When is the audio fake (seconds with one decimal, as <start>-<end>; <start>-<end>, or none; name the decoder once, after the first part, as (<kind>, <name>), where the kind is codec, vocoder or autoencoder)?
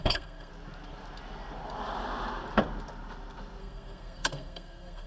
0.0-0.5 (codec, SNAC); 3.6-5.1